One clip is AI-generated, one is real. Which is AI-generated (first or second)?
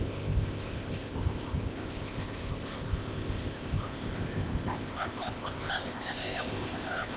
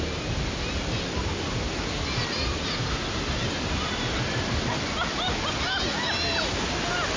first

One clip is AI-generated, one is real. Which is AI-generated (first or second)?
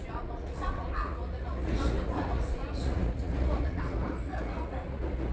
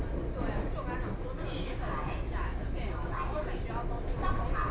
first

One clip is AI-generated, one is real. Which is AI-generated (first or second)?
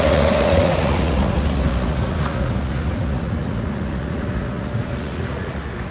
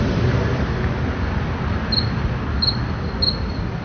first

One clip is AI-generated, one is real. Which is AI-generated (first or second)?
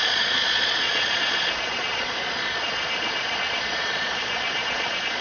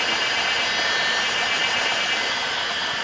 first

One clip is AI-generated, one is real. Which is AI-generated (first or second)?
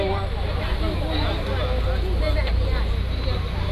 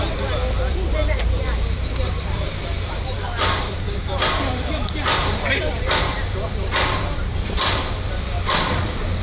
second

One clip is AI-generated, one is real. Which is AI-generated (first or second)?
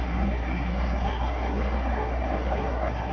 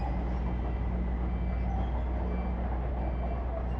first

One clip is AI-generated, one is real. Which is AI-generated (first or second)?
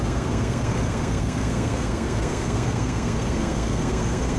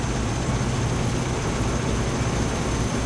first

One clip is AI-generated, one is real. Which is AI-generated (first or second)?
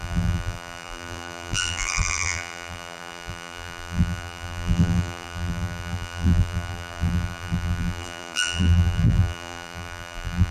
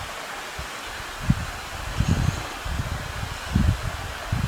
first